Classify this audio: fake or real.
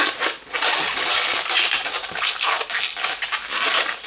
real